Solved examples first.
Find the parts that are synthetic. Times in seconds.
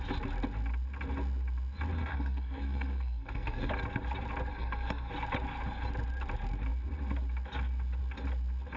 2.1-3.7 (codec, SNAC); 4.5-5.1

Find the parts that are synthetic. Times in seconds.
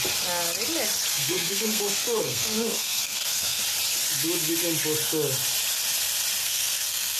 1.1-3.6 (codec, SNAC); 6.4-7.2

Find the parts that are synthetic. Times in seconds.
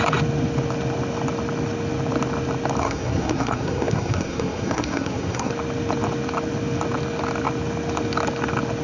2.8-5.5 (codec, SNAC)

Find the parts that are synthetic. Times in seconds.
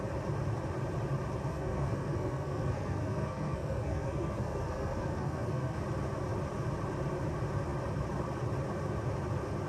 1.5-5.8 (codec, SNAC)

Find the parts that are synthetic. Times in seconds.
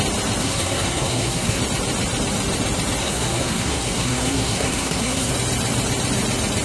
0.4-1.6 (codec, SNAC); 3.0-5.3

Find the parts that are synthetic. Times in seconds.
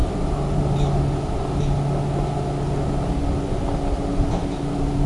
none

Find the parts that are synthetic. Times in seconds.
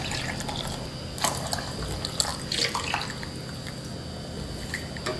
none